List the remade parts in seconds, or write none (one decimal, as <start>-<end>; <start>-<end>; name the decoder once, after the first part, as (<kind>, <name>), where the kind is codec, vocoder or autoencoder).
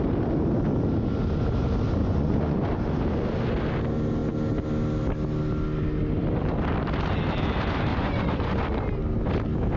2.0-2.7 (vocoder, Vocos); 7.9-8.5